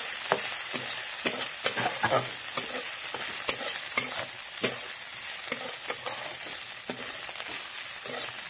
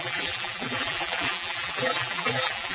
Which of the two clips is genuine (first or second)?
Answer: first